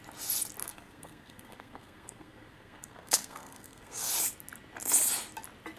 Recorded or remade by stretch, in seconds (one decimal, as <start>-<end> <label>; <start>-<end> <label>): 0.0-0.6 recorded; 0.6-4.1 remade; 4.1-5.8 recorded